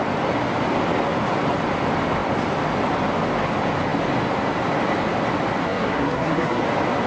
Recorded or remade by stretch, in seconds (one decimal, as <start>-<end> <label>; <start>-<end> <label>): 0.0-5.6 recorded; 5.6-6.6 remade; 6.6-7.1 recorded